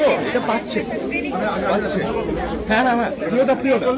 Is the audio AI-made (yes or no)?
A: no